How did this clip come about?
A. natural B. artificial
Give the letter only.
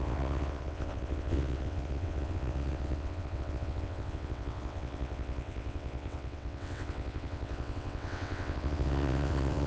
B